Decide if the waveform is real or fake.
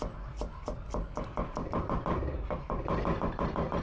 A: real